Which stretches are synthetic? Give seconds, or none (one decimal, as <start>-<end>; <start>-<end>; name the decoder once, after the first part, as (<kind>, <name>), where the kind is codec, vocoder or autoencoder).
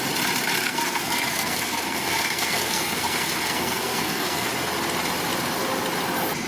0.6-4.5 (codec, SNAC)